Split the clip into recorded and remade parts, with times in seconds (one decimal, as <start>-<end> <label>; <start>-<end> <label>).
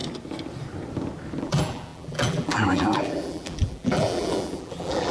0.0-1.4 recorded; 1.4-5.1 remade